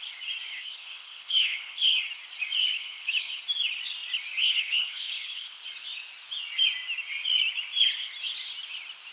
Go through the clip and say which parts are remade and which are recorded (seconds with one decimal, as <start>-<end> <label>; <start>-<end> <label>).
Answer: 0.0-0.5 recorded; 0.5-2.0 remade; 2.0-2.6 recorded; 2.6-3.4 remade; 3.4-4.4 recorded; 4.4-5.6 remade; 5.6-9.1 recorded